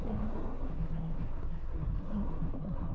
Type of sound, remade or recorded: remade